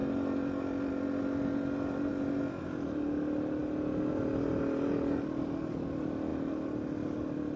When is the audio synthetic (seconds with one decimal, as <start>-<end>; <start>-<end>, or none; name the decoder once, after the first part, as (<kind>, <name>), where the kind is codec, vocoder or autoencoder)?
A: none